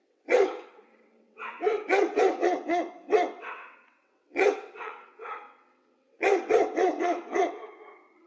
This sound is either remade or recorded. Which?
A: remade